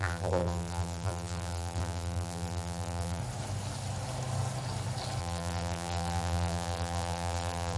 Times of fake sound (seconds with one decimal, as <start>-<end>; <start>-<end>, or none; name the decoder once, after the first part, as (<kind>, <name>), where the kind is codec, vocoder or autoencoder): 0.0-3.2 (vocoder, BigVGAN v2); 5.2-7.8